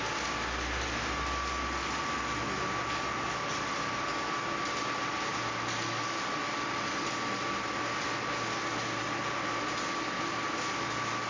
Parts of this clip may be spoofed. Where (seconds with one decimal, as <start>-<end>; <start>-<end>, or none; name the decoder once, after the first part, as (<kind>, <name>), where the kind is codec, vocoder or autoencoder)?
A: none

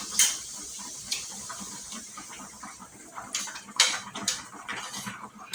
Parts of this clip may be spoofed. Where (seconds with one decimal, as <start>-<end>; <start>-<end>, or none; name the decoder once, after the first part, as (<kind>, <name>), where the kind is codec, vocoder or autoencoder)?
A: 0.0-5.5 (vocoder, BigVGAN v2)

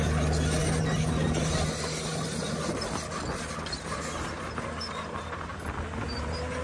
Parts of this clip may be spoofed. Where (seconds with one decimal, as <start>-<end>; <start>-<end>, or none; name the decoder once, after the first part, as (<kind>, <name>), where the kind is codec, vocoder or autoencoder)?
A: none

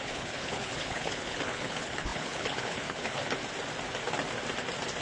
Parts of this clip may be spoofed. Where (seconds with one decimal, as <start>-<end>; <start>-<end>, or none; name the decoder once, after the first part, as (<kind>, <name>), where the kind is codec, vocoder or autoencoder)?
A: 0.0-3.2 (codec, HILCodec)

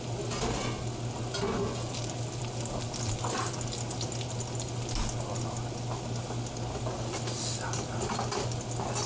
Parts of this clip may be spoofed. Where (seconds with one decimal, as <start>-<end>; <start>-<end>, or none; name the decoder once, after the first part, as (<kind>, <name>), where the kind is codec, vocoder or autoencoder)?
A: none